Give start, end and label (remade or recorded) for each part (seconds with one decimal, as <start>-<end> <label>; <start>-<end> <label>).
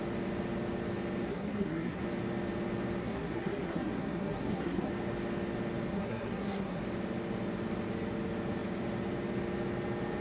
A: 0.0-1.3 recorded; 1.3-2.0 remade; 2.0-3.0 recorded; 3.0-4.9 remade; 4.9-5.9 recorded; 5.9-6.8 remade; 6.8-10.2 recorded